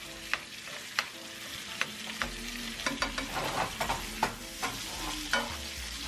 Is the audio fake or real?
real